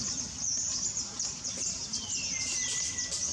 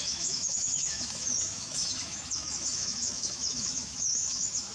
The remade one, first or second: second